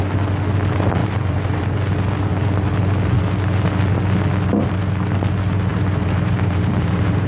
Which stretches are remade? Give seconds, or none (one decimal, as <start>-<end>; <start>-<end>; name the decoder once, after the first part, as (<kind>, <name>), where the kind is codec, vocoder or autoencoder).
1.0-1.6 (vocoder, BigVGAN v2); 5.7-7.3